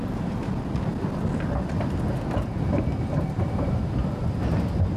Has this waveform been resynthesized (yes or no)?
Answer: no